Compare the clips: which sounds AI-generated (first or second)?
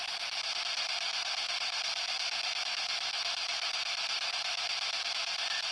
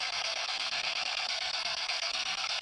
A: second